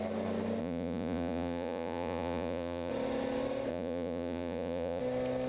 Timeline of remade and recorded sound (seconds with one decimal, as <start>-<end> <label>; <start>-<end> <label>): 0.0-0.6 recorded; 0.6-2.9 remade; 2.9-3.7 recorded; 3.7-5.0 remade; 5.0-5.5 recorded